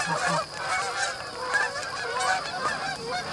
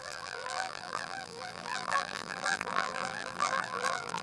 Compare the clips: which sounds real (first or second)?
first